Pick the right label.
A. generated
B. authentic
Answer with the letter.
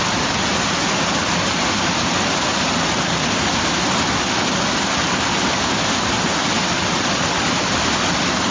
B